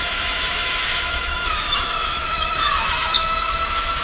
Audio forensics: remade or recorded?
remade